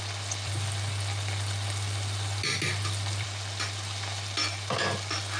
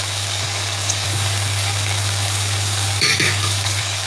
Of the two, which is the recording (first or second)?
first